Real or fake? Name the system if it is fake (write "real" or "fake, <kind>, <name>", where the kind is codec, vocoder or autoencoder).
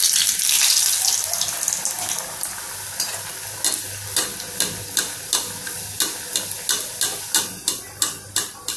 real